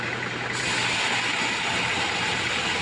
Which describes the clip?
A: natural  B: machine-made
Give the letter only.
A